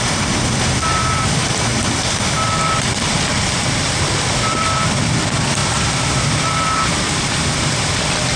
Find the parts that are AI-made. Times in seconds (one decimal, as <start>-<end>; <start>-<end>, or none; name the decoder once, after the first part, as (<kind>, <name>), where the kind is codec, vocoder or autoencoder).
0.0-1.7 (vocoder, BigVGAN v2); 3.3-8.4